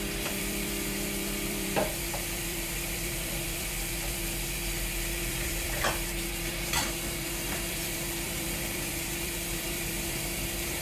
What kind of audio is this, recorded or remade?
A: remade